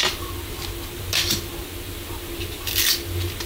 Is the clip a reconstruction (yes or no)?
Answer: yes